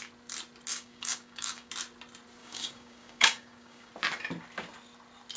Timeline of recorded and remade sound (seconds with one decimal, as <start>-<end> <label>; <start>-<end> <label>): 0.0-0.7 recorded; 0.7-1.7 remade; 1.7-2.4 recorded; 2.4-3.9 remade; 3.9-5.4 recorded